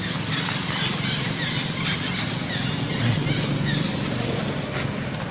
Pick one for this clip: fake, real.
real